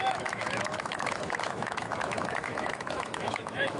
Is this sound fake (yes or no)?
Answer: yes